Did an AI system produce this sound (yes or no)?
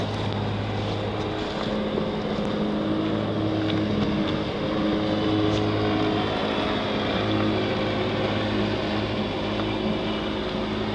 no